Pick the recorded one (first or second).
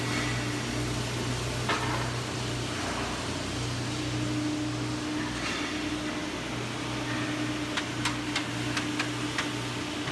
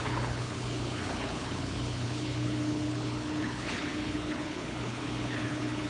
first